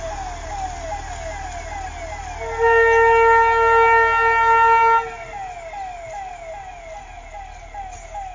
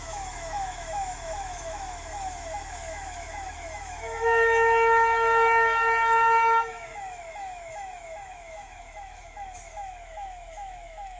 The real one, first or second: first